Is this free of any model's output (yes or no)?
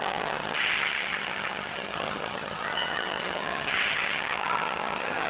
no